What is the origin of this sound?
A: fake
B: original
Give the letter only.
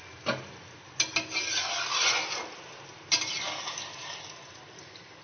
B